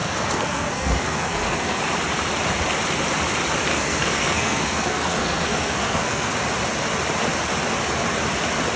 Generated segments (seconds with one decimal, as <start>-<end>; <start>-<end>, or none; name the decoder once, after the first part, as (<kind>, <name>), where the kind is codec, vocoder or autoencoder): 0.0-1.8 (codec, SNAC); 3.7-6.3